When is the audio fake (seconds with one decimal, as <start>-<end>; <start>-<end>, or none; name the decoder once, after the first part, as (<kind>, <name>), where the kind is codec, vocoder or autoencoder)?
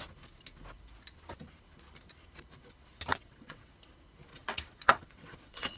3.1-3.7 (vocoder, WaveNeXt); 4.3-5.8